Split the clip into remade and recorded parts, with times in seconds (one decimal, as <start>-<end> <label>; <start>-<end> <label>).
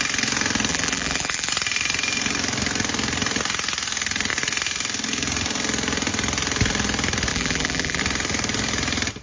0.0-0.7 recorded; 0.7-1.5 remade; 1.5-7.3 recorded; 7.3-8.0 remade; 8.0-9.2 recorded